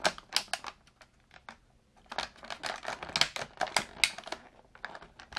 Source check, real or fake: real